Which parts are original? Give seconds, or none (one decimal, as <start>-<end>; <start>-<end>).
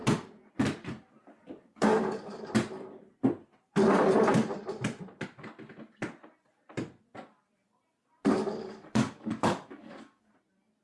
0.0-1.7; 2.5-8.2; 10.3-10.8